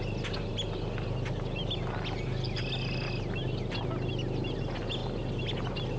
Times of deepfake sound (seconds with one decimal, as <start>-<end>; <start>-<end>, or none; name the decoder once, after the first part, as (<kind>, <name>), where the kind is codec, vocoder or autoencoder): none